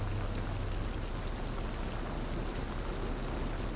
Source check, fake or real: real